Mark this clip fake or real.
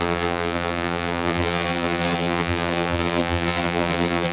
fake